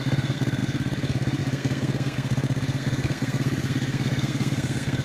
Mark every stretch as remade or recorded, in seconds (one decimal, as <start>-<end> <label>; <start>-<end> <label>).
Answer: 0.0-5.0 remade

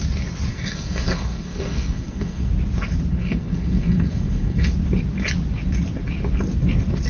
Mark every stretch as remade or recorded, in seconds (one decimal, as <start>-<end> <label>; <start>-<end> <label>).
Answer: 0.0-0.5 recorded; 0.5-2.5 remade; 2.5-3.1 recorded; 3.1-4.7 remade; 4.7-7.1 recorded

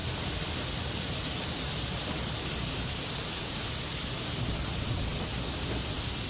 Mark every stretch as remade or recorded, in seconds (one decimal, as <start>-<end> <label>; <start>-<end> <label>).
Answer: 0.0-1.0 recorded; 1.0-3.2 remade; 3.2-4.0 recorded; 4.0-6.3 remade

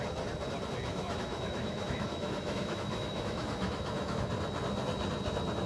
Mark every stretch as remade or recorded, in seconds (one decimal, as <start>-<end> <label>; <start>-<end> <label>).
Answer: 0.0-0.9 recorded; 0.9-4.3 remade; 4.3-5.7 recorded

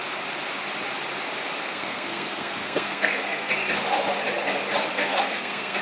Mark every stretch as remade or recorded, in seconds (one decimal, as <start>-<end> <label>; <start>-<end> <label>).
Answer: 0.0-1.6 recorded; 1.6-3.5 remade; 3.5-4.9 recorded; 4.9-5.8 remade